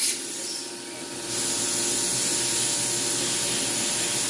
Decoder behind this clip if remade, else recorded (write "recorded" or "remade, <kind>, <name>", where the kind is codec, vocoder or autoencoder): recorded